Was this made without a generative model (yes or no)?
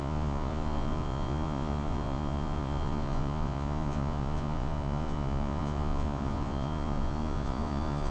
no